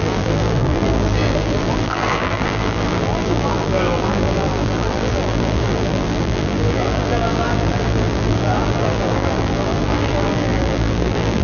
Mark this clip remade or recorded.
remade